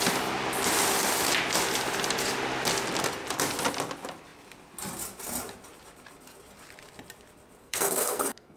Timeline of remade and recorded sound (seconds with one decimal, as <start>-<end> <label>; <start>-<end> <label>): 0.0-7.6 recorded; 7.6-8.6 remade